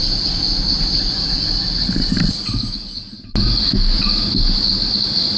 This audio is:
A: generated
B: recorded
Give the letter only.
B